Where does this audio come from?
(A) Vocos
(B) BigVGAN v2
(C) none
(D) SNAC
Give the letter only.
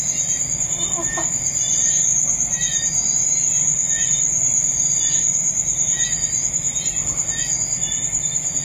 C